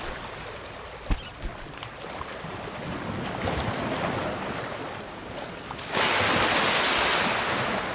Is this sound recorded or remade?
recorded